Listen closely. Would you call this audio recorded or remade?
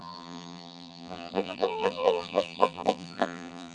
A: remade